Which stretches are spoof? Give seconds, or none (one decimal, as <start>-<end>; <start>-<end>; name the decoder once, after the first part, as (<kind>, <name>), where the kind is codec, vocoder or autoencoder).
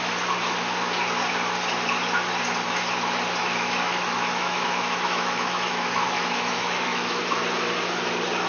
3.4-7.2 (autoencoder, DAC-VAE)